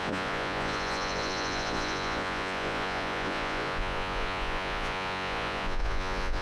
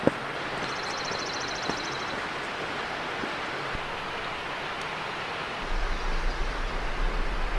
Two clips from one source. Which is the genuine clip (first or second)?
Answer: second